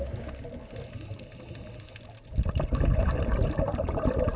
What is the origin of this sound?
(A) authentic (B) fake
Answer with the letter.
A